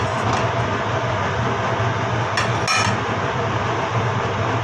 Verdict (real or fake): real